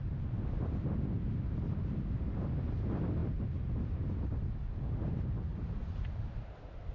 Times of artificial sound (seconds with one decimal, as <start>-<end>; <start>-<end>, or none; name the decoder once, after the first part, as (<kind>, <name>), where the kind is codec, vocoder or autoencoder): 5.5-6.4 (vocoder, BigVGAN v2)